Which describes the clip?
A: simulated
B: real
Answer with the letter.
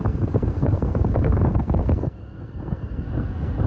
A